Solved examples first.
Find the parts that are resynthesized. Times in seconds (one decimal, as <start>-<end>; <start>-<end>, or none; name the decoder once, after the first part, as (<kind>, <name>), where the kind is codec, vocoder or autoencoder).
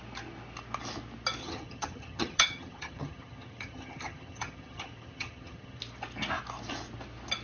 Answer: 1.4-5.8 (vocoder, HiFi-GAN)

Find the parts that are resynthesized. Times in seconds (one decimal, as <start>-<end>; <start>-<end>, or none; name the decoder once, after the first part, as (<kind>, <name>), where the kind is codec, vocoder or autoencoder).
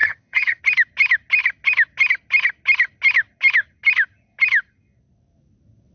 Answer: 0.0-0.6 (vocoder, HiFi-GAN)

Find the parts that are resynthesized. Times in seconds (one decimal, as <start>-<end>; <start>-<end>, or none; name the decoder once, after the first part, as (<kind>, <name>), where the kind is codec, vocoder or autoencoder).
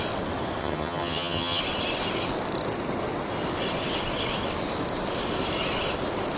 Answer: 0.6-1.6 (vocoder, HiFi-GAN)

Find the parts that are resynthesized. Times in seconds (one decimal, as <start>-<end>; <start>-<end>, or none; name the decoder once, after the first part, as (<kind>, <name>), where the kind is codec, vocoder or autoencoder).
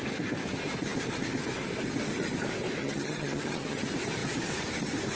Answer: 2.8-3.8 (vocoder, HiFi-GAN)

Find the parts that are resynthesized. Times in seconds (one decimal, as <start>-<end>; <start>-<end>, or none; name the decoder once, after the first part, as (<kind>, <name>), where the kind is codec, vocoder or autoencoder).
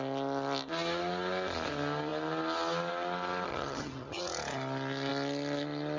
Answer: 3.5-4.2 (vocoder, HiFi-GAN)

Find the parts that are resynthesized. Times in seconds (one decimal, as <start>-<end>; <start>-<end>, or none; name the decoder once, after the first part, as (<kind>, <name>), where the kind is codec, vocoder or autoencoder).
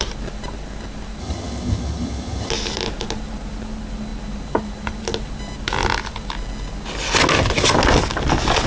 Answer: 1.2-2.5 (vocoder, HiFi-GAN)